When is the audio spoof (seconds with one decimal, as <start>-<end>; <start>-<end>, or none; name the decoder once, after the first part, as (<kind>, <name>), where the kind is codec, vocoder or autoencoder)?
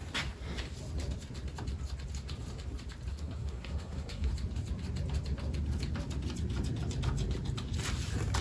3.1-4.3 (codec, SNAC)